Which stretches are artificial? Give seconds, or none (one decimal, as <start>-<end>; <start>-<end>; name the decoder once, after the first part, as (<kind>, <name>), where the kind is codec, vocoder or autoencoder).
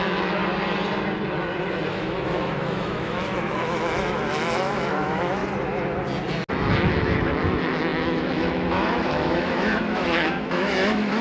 0.0-0.4 (autoencoder, DAC-VAE); 1.9-5.4; 6.5-11.2